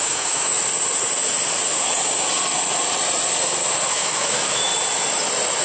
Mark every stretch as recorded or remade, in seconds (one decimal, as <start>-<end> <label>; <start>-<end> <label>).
0.0-0.5 remade; 0.5-3.9 recorded; 3.9-4.7 remade; 4.7-5.6 recorded